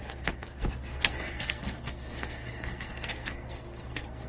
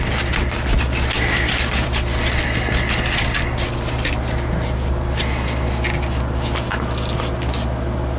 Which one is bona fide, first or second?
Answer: second